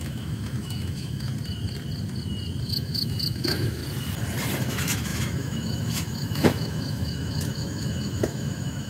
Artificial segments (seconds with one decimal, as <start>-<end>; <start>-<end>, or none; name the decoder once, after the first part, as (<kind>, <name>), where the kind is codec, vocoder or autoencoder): 0.0-1.3 (autoencoder, DAC-VAE); 2.6-3.8; 4.6-8.9